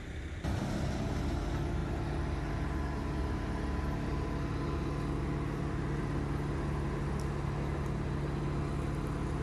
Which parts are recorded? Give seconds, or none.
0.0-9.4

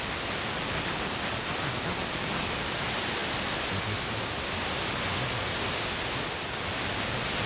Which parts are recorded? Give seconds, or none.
0.0-7.5

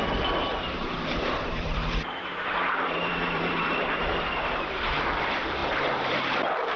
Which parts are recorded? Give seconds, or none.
0.0-0.5; 4.0-5.6

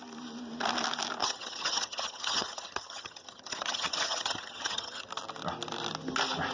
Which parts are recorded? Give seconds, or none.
0.0-1.2; 5.1-6.5